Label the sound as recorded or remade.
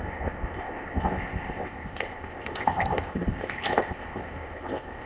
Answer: remade